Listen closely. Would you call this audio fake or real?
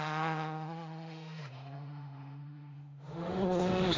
fake